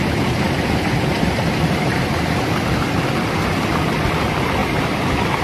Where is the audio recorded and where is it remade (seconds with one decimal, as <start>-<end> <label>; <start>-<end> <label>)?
0.0-3.0 remade; 3.0-4.6 recorded; 4.6-5.4 remade